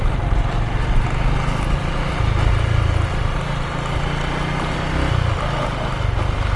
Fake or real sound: real